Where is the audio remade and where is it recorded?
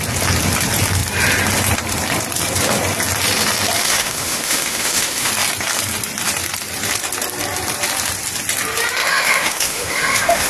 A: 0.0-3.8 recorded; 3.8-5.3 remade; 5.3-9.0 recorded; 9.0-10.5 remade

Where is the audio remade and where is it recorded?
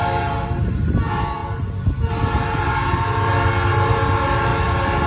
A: 0.0-5.1 recorded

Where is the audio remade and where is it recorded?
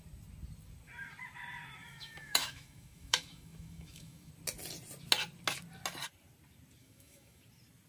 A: 0.0-1.8 recorded; 1.8-4.3 remade; 4.3-6.8 recorded; 6.8-7.4 remade; 7.4-7.9 recorded